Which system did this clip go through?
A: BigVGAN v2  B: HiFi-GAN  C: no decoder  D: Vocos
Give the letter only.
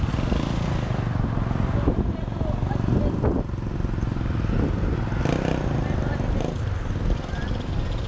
C